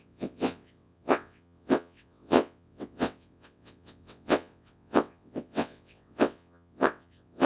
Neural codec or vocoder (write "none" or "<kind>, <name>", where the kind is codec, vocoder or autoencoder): vocoder, WaveNeXt